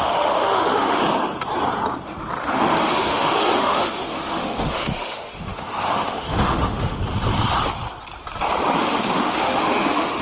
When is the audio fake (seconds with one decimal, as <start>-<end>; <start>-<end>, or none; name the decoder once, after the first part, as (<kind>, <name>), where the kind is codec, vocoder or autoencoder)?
0.0-1.0 (autoencoder, DAC-VAE); 2.4-7.0; 8.8-10.2